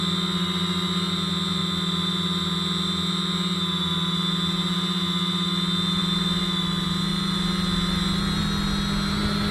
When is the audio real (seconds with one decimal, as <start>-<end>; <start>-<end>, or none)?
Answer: 0.0-9.5